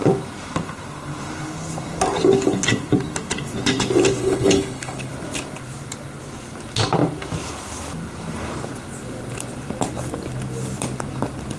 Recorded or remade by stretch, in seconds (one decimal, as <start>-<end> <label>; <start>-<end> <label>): 0.0-4.2 recorded; 4.2-5.1 remade; 5.1-11.6 recorded